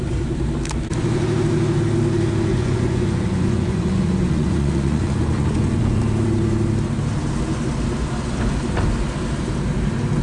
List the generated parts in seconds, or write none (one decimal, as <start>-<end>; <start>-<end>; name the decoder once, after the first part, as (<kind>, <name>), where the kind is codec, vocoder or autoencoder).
2.5-6.0 (vocoder, Vocos)

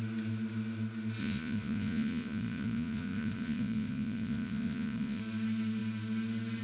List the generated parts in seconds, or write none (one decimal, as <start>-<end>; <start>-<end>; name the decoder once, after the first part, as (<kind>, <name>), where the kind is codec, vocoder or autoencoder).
1.2-5.2 (vocoder, Vocos)

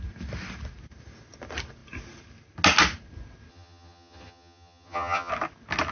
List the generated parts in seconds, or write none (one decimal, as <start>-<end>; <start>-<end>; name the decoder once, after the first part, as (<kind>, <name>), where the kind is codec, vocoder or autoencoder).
3.5-5.3 (vocoder, HiFi-GAN)

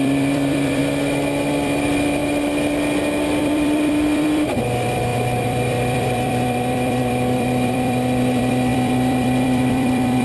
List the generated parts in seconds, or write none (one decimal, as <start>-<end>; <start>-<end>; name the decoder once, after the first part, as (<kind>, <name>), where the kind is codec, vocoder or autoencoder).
0.0-0.8 (vocoder, BigVGAN v2); 1.5-2.2; 3.4-10.2

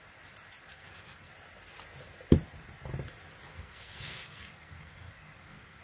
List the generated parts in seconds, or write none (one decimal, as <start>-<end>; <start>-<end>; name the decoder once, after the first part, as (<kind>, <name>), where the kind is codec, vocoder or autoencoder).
0.7-1.3 (codec, SNAC); 3.5-5.8

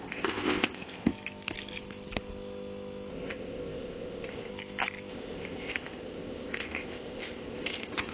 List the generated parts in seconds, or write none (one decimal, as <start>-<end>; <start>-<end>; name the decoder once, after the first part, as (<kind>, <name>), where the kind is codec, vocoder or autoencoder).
0.0-1.1 (codec, ZipCodec); 3.1-4.5; 5.1-8.1

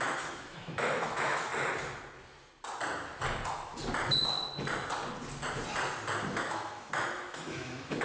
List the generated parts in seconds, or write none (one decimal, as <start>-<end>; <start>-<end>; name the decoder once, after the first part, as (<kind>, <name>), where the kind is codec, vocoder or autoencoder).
0.0-1.5 (autoencoder, DAC-VAE); 6.3-8.0